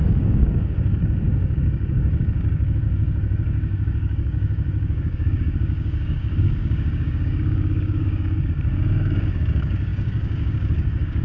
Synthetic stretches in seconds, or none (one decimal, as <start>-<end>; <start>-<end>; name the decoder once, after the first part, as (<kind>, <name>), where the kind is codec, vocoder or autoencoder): 0.0-11.2 (codec, DAC)